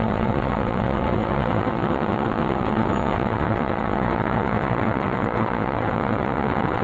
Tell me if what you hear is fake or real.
fake